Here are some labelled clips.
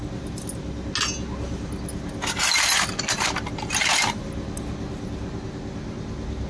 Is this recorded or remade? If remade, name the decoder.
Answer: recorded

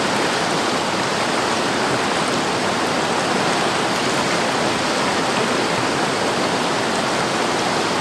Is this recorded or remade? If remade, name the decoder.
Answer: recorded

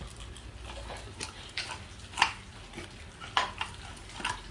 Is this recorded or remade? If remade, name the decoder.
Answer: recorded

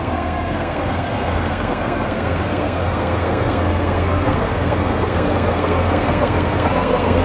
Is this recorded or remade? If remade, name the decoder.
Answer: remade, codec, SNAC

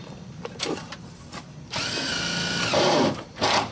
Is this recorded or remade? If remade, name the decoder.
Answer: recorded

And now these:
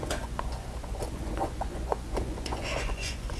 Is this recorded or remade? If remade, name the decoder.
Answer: remade, vocoder, Vocos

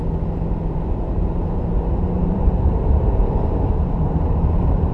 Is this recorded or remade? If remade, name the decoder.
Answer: remade, vocoder, BigVGAN v2